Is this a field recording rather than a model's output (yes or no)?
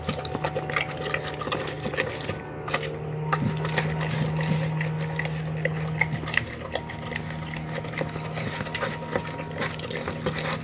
yes